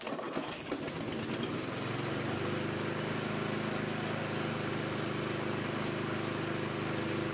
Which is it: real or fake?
real